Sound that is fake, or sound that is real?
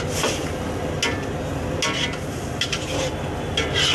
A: real